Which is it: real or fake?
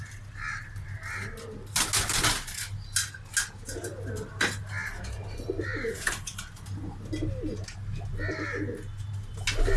real